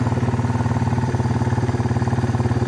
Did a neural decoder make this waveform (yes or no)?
no